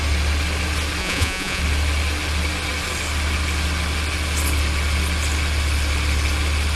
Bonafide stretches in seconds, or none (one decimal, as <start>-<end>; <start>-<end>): 0.0-1.0; 1.6-6.8

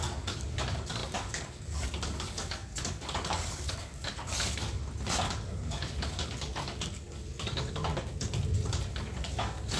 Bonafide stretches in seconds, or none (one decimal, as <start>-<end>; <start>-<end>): 4.8-5.5; 7.9-8.9

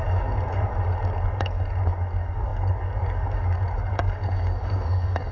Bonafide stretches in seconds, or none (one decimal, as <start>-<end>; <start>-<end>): none